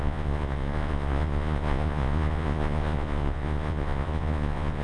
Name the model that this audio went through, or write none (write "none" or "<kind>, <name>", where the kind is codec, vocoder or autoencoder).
vocoder, Vocos